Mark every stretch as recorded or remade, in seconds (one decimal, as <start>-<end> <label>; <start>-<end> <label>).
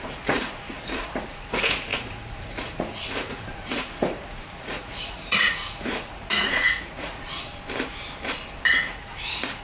0.0-7.5 remade; 7.5-8.7 recorded; 8.7-9.6 remade